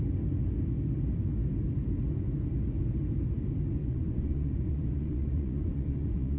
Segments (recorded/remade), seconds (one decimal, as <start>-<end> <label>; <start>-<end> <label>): 0.0-3.8 recorded; 3.8-6.4 remade